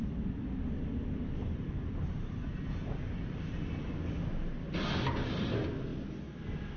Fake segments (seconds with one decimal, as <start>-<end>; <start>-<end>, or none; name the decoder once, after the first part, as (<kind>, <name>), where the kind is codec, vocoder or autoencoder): 1.4-3.8 (vocoder, BigVGAN v2)